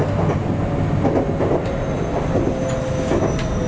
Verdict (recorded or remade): recorded